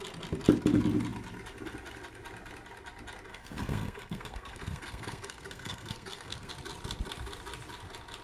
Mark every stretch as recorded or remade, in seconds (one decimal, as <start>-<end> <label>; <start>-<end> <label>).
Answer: 0.0-3.3 recorded; 3.3-6.5 remade; 6.5-8.2 recorded